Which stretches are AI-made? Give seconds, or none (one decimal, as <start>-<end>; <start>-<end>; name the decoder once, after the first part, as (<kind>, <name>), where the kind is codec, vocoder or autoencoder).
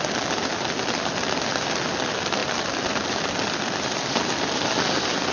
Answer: none